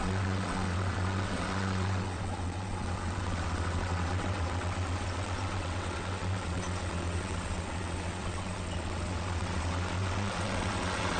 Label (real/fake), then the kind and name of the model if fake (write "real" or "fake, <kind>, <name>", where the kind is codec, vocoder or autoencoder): fake, vocoder, WaveNeXt